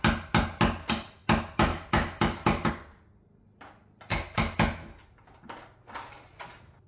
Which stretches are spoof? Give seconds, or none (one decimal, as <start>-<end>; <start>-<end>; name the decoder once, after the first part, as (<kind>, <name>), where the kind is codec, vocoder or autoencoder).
1.7-2.7 (autoencoder, DAC-VAE); 4.1-5.0